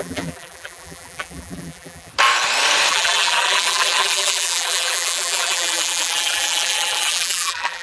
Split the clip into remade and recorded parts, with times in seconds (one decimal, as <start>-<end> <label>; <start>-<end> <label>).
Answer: 0.0-2.1 remade; 2.1-2.9 recorded; 2.9-7.8 remade